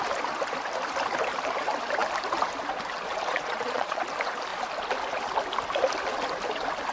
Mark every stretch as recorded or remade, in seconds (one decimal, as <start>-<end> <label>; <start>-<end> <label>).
0.0-3.3 recorded; 3.3-4.0 remade; 4.0-6.9 recorded